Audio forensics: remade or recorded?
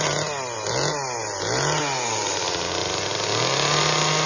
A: recorded